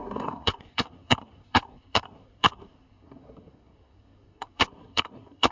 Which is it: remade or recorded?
remade